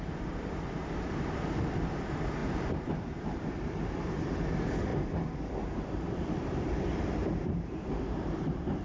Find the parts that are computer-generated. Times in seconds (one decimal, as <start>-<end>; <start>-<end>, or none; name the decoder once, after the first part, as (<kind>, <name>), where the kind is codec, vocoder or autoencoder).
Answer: 0.0-4.9 (vocoder, BigVGAN v2); 6.1-8.8